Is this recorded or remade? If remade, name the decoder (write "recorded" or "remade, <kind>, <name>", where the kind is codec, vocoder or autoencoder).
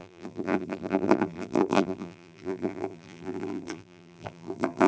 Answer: remade, vocoder, BigVGAN v2